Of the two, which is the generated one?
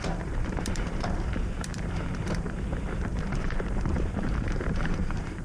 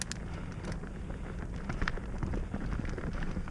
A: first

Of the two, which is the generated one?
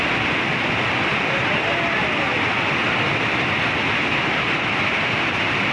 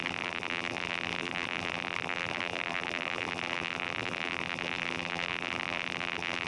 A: second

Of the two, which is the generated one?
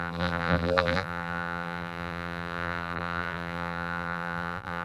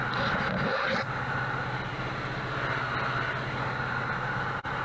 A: first